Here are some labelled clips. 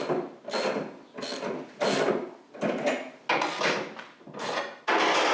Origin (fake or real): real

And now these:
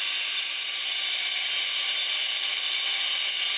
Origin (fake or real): real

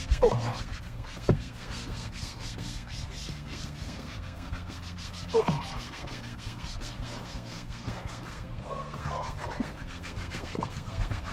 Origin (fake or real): fake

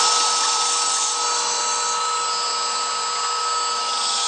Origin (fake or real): real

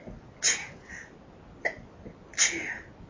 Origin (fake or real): real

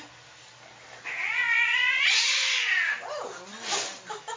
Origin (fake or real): real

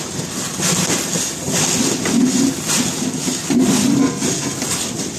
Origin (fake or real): real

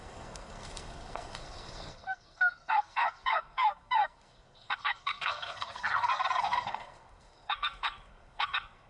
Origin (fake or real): fake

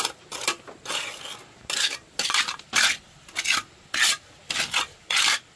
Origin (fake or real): real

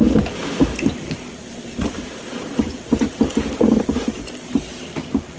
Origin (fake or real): real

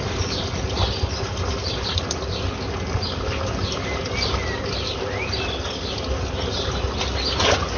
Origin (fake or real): real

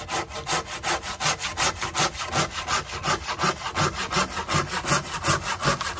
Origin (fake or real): real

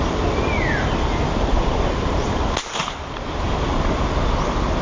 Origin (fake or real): real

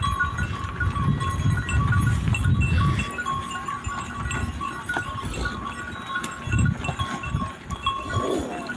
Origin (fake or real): real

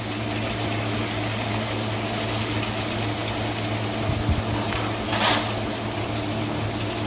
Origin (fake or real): real